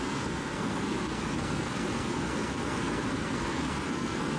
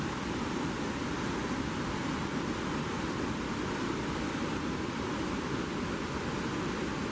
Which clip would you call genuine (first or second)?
second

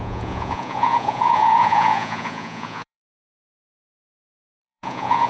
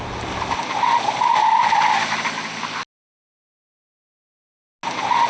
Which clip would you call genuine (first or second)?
second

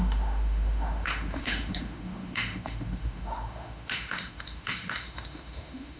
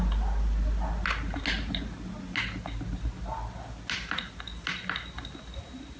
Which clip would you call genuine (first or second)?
second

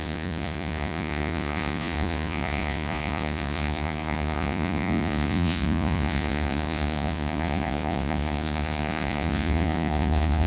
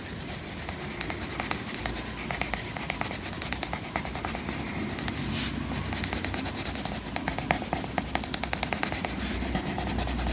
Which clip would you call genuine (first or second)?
second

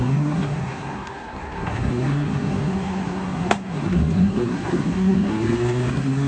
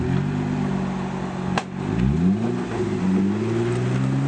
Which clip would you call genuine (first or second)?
second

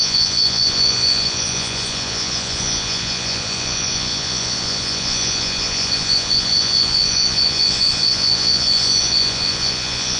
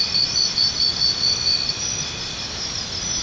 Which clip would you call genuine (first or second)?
second